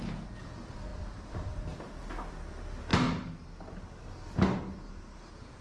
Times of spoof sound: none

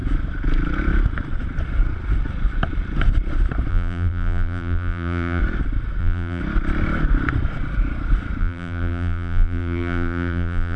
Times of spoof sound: 3.7-5.4 (vocoder, BigVGAN v2); 6.0-6.4; 8.4-10.8

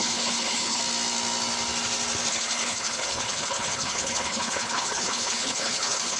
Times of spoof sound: 0.0-0.8 (codec, HILCodec); 2.3-6.2

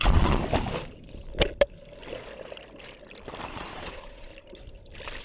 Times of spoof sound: 0.0-0.4 (vocoder, Vocos); 3.5-4.3

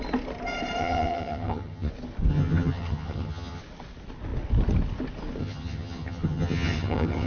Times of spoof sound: 0.8-1.9 (vocoder, HiFi-GAN); 2.3-3.6; 5.4-7.3

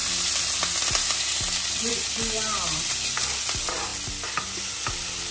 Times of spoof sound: none

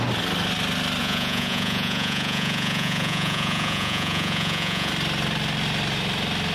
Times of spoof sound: 1.0-4.9 (vocoder, Vocos)